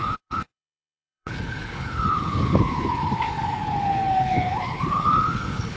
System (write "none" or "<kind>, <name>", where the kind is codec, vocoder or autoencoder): codec, HILCodec